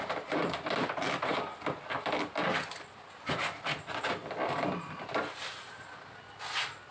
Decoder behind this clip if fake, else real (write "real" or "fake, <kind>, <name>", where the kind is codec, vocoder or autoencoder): real